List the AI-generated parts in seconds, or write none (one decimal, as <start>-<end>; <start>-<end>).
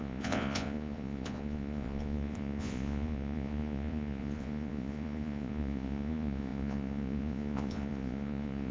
0.0-8.7